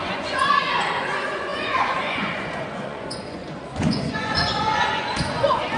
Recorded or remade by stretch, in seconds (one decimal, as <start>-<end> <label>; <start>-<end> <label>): 0.0-5.8 remade